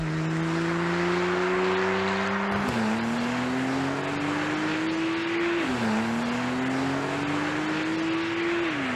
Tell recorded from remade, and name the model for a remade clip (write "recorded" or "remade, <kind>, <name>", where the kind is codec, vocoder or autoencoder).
recorded